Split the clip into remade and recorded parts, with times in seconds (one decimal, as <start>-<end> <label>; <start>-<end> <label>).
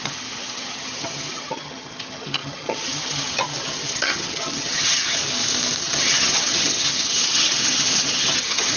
0.0-5.2 remade; 5.2-5.8 recorded; 5.8-8.8 remade